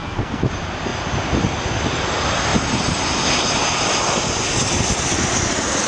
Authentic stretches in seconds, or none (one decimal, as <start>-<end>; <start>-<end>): 0.5-5.9